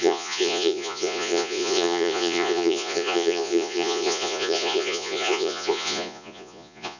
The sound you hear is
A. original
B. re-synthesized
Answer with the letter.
B